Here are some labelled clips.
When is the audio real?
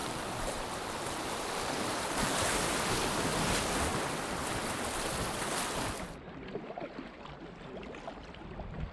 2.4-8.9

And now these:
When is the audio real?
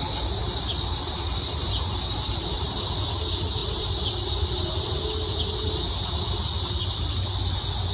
0.0-3.6; 5.0-7.9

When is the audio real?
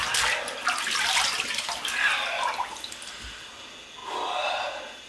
0.0-5.1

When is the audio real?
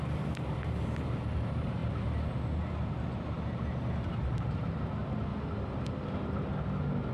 0.0-5.3; 6.5-7.1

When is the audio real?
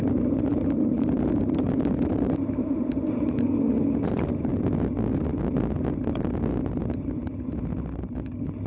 0.0-0.5; 4.5-6.8; 7.6-8.7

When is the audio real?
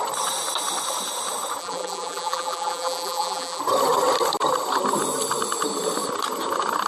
0.0-1.6; 3.6-6.9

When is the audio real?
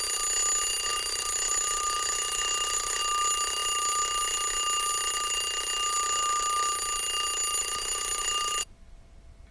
0.0-0.9; 3.0-7.5; 8.7-9.5